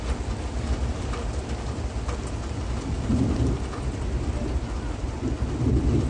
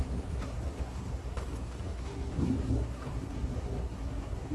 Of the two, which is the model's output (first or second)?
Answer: second